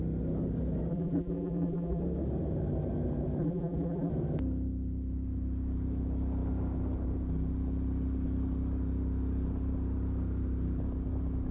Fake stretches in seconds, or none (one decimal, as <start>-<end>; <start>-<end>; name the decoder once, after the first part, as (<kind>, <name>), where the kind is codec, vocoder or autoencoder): 0.9-2.0 (vocoder, BigVGAN v2); 3.4-4.1